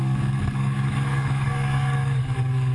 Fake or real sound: fake